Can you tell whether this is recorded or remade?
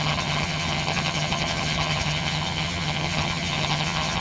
remade